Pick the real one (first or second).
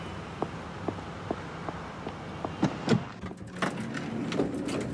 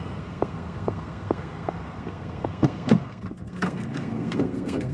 first